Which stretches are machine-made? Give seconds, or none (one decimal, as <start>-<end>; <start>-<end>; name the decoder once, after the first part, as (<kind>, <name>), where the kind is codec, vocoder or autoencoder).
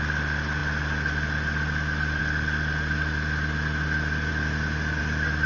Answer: none